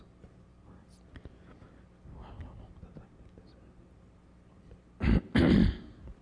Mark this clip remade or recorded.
recorded